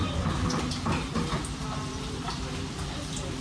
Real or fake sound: fake